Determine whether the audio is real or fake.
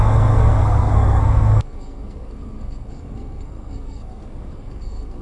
fake